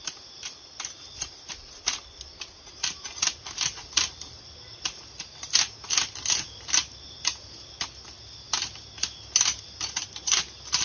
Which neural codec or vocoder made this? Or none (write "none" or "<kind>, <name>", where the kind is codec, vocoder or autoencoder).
none